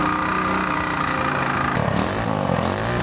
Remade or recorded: recorded